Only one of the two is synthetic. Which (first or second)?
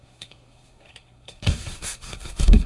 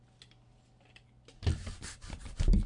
first